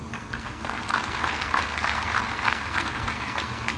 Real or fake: fake